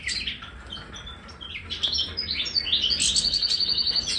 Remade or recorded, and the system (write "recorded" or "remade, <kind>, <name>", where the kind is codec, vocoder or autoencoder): recorded